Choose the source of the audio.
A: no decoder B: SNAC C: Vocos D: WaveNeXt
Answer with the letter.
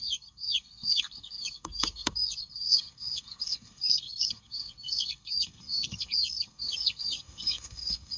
B